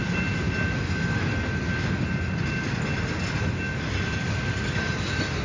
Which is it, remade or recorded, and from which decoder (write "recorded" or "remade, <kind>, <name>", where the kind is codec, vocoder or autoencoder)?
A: recorded